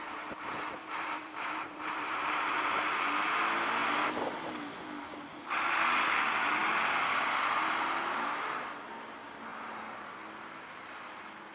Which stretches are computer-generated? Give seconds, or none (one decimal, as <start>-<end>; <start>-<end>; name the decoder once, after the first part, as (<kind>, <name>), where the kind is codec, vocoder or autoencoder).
none